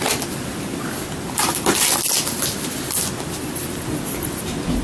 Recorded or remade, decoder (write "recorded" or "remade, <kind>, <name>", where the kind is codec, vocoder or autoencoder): recorded